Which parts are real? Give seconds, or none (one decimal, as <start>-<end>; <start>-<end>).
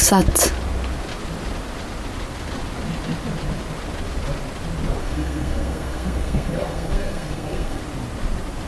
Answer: 0.0-5.0; 7.8-8.7